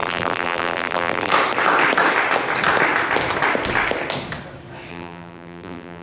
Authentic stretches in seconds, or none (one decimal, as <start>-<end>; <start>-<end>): 1.3-4.9